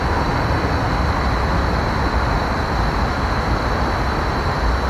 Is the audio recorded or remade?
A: recorded